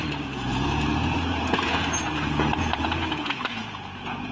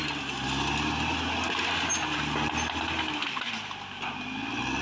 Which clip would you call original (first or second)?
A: second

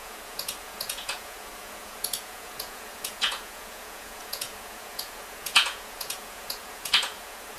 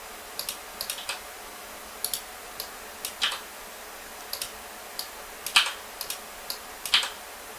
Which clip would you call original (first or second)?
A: second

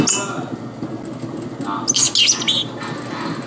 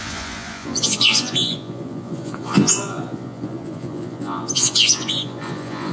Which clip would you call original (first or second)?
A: first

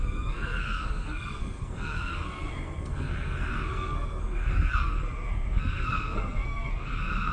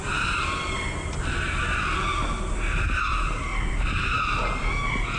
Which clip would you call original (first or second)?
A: second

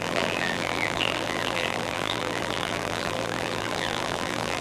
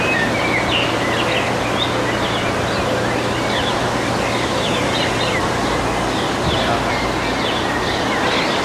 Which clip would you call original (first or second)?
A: second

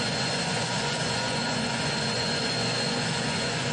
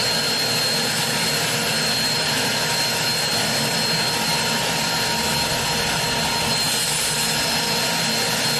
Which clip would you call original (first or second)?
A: second